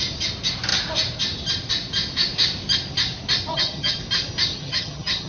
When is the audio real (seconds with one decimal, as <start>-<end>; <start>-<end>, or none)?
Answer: 0.0-3.5; 4.0-4.5